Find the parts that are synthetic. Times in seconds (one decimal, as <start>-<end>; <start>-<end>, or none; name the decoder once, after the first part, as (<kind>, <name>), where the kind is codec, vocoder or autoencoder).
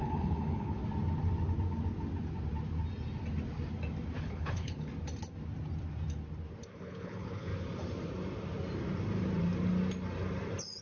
0.0-0.8 (codec, HILCodec); 4.2-4.9; 6.7-7.5